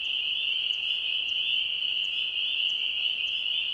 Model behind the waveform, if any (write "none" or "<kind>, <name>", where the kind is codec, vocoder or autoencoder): none